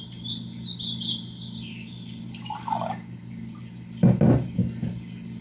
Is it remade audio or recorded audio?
recorded